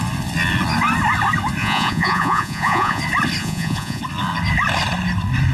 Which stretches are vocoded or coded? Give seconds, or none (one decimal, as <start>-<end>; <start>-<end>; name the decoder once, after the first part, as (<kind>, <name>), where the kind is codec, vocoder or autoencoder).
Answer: 1.6-3.0 (vocoder, Vocos); 3.4-4.0